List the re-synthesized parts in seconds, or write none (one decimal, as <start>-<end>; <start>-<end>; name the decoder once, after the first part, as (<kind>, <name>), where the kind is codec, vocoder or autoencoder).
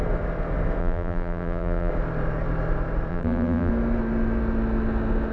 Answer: 0.8-1.9 (vocoder, BigVGAN v2); 3.1-3.7